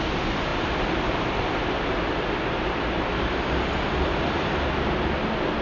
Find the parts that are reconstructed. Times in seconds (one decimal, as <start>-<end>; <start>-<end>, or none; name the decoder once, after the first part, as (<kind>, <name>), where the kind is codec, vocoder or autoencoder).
none